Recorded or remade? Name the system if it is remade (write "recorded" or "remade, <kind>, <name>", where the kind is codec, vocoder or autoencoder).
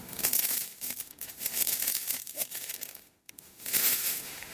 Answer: remade, autoencoder, DAC-VAE